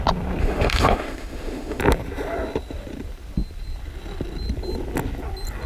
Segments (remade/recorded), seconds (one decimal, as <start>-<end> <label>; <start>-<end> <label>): 0.0-0.4 recorded; 0.4-1.8 remade; 1.8-5.7 recorded